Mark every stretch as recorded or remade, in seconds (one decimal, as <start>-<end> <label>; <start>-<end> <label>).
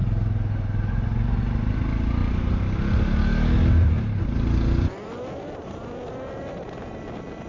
0.0-7.5 recorded